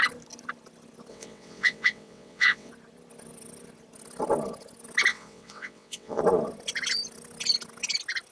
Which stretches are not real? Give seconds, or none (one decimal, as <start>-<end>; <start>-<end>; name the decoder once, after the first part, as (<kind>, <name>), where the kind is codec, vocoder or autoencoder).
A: 1.1-2.7 (vocoder, WaveNeXt); 5.1-6.2